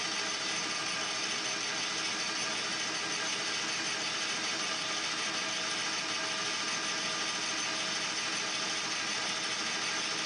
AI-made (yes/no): no